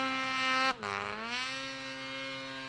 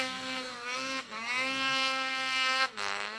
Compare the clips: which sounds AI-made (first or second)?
second